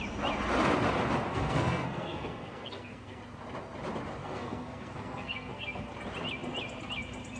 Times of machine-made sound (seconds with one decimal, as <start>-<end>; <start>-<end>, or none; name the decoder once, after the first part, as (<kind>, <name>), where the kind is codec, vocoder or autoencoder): 1.3-3.2 (codec, SNAC); 4.2-5.9